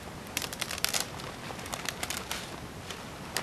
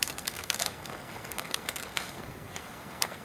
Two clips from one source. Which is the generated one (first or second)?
second